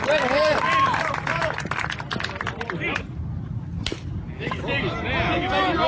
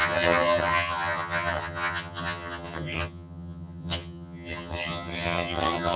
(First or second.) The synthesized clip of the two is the second